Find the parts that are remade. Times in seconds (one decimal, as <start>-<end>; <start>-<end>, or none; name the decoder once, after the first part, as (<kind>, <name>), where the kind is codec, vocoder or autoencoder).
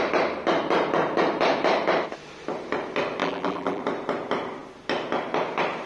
3.2-3.8 (vocoder, BigVGAN v2)